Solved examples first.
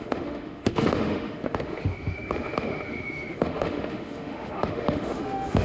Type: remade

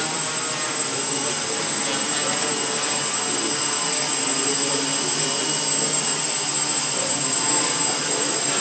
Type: recorded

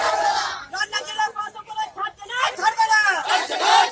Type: recorded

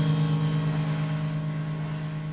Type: recorded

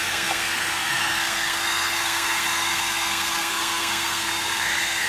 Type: remade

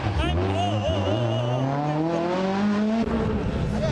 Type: recorded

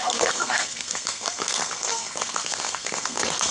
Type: remade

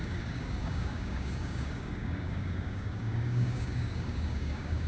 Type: remade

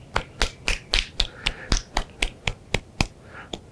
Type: recorded